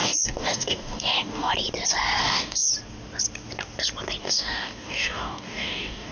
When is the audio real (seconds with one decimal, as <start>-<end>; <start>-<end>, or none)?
1.5-2.2; 2.7-4.2